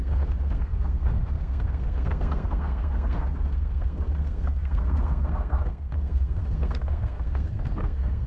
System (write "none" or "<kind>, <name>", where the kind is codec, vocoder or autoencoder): codec, SNAC